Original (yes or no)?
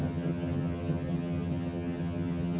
no